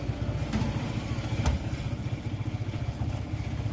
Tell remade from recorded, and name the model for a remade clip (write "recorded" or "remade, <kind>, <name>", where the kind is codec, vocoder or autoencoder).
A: recorded